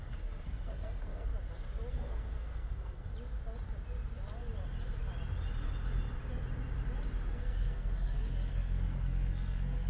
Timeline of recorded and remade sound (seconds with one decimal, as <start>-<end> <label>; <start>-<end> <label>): 0.0-1.3 remade; 1.3-1.9 recorded; 1.9-3.1 remade; 3.1-7.3 recorded; 7.3-9.9 remade